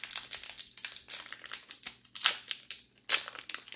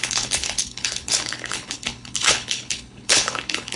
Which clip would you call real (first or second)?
first